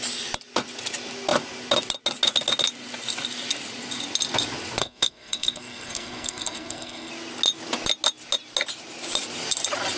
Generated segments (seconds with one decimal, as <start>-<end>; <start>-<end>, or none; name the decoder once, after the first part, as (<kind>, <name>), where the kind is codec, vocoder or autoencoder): 4.8-7.1 (codec, SNAC)